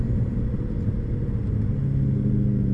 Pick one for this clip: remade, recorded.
recorded